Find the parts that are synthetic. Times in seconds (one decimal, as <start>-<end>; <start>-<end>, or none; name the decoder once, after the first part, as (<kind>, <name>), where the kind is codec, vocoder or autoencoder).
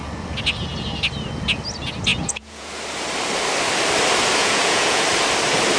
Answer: 2.1-2.7 (vocoder, Vocos); 4.4-5.0